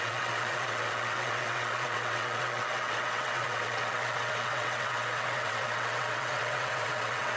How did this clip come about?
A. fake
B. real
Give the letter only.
A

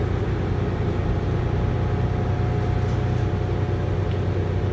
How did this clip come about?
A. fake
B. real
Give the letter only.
B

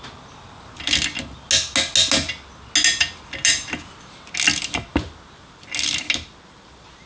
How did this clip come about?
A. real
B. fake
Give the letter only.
A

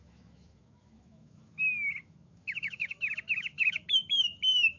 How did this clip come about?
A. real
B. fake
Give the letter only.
B